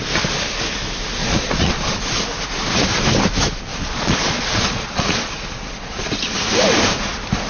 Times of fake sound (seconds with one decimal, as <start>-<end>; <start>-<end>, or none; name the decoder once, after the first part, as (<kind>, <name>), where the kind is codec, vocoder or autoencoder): 1.2-2.0 (vocoder, Vocos); 3.7-6.1